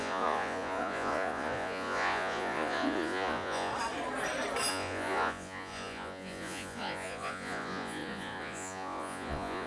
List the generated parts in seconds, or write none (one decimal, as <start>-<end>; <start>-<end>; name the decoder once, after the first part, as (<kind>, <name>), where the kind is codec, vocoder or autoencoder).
0.0-3.7 (vocoder, Vocos); 4.7-9.7